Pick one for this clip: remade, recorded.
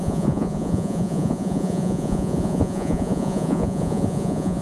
remade